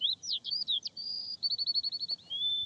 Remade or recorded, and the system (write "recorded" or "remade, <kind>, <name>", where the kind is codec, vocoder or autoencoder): remade, vocoder, BigVGAN v2